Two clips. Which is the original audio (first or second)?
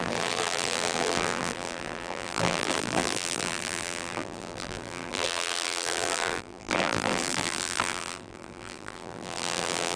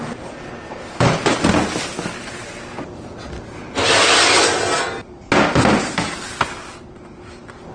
second